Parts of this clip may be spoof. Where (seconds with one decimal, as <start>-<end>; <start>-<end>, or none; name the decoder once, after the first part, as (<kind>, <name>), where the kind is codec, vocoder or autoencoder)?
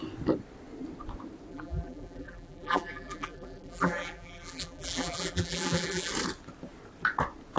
1.5-6.1 (vocoder, BigVGAN v2)